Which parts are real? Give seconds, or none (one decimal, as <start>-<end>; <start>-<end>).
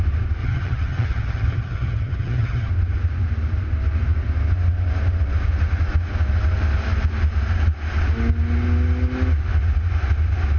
0.0-0.4; 2.7-10.6